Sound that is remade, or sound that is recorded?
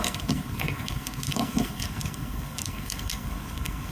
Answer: remade